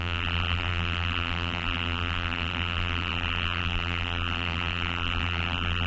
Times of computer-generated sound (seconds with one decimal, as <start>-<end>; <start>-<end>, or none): 0.0-5.9